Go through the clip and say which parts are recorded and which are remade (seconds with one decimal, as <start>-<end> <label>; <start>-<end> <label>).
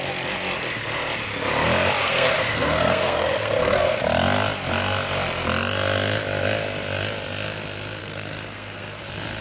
0.0-2.0 recorded; 2.0-4.0 remade; 4.0-8.0 recorded; 8.0-9.0 remade; 9.0-9.4 recorded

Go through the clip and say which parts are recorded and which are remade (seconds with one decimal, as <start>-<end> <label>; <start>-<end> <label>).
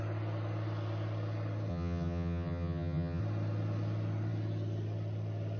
0.0-1.7 recorded; 1.7-3.2 remade; 3.2-5.6 recorded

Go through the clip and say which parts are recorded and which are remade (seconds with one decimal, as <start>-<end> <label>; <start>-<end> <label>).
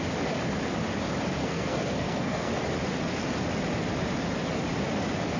0.0-1.4 recorded; 1.4-2.5 remade; 2.5-5.4 recorded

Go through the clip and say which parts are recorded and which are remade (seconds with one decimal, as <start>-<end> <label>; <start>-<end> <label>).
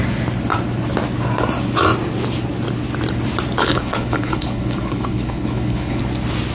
0.0-3.6 recorded; 3.6-6.0 remade; 6.0-6.5 recorded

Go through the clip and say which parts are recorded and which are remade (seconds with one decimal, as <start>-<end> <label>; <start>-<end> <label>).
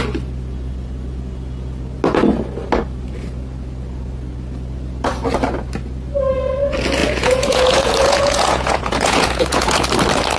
0.0-7.0 recorded; 7.0-9.8 remade; 9.8-10.4 recorded